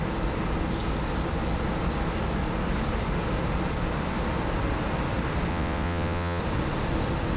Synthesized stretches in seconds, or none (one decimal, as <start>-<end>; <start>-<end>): 5.5-6.4